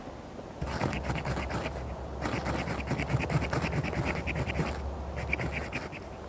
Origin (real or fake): real